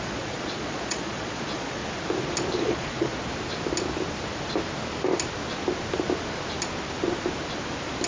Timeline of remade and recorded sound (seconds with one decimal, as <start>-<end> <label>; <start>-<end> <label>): 0.0-1.8 remade; 1.8-2.6 recorded; 2.6-3.1 remade; 3.1-8.1 recorded